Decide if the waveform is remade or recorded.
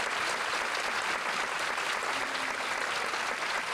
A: recorded